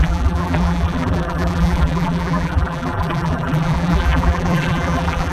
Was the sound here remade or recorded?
remade